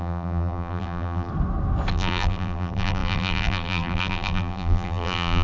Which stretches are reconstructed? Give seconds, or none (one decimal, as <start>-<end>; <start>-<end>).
0.0-1.3; 1.9-5.4